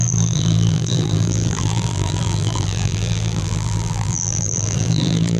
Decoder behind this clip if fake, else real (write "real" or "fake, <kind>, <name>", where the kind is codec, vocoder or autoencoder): fake, vocoder, BigVGAN v2